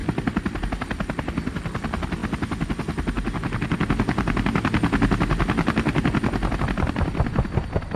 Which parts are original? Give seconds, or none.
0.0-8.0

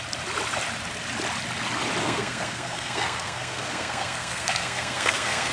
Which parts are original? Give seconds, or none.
0.0-2.0

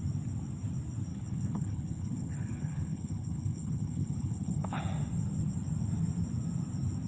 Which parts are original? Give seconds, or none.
0.0-1.1; 4.8-7.1

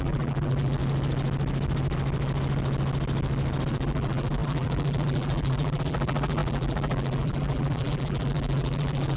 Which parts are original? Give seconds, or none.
0.8-3.7

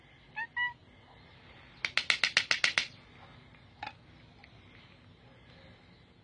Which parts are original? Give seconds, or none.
0.0-6.2

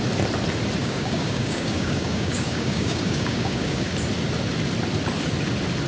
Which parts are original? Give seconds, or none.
0.0-0.8; 3.9-5.9

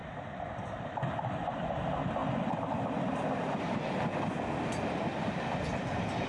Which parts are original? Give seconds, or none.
0.0-6.3